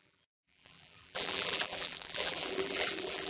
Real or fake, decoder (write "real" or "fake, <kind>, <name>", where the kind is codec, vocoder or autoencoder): fake, vocoder, BigVGAN v2